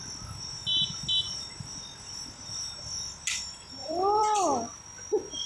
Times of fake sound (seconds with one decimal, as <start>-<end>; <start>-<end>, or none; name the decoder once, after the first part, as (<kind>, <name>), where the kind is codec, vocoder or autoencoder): 3.8-5.5 (vocoder, BigVGAN v2)